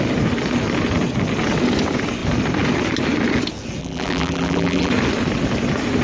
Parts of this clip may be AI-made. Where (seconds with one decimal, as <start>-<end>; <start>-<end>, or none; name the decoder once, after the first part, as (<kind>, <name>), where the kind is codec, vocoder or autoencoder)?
3.8-4.9 (vocoder, BigVGAN v2)